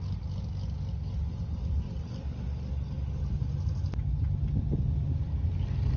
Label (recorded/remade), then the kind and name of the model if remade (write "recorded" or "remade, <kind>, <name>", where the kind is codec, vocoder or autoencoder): recorded